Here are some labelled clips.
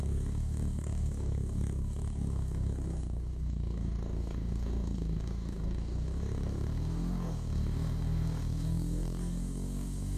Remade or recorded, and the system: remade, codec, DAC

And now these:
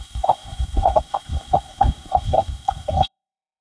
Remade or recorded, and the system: remade, codec, SNAC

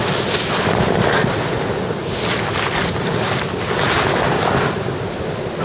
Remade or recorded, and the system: recorded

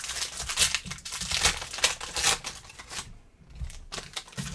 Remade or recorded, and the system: recorded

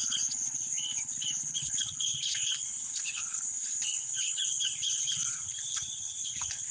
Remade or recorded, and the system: remade, codec, HILCodec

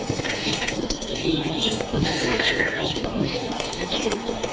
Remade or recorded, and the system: remade, codec, SNAC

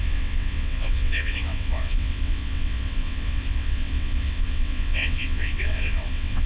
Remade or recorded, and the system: remade, vocoder, WaveNeXt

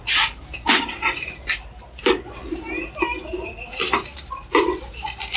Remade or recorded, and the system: remade, vocoder, BigVGAN v2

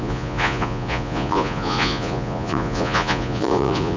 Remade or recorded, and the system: remade, vocoder, Vocos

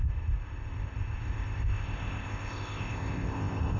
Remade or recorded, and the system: remade, codec, ZipCodec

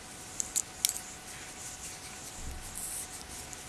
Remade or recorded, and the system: recorded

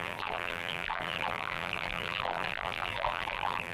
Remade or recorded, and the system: remade, vocoder, BigVGAN v2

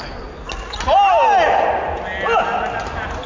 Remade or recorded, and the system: recorded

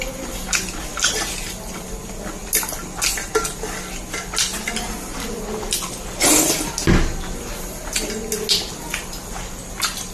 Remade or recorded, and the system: recorded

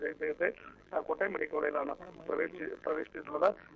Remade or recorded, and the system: remade, vocoder, BigVGAN v2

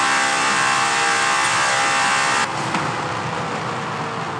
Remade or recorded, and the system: recorded